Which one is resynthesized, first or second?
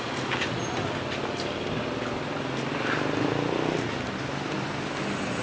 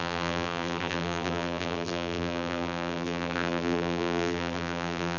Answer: second